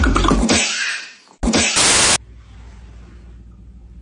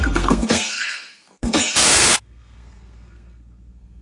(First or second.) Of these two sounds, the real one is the first